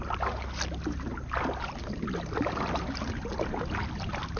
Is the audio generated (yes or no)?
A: no